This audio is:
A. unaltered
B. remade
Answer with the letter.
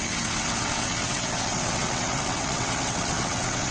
B